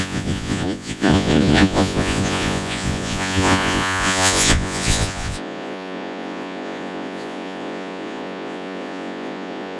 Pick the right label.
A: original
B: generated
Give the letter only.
B